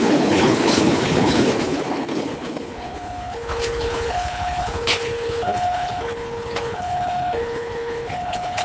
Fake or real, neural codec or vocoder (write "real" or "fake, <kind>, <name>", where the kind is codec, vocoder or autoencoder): fake, codec, HILCodec